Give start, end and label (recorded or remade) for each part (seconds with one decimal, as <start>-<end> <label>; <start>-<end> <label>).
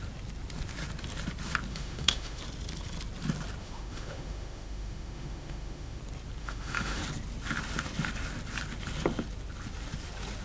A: 0.0-1.7 recorded; 1.7-2.4 remade; 2.4-3.6 recorded; 3.6-6.0 remade; 6.0-6.4 recorded; 6.4-7.0 remade; 7.0-10.4 recorded